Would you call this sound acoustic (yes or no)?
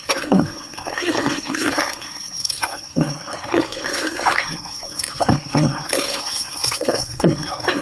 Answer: no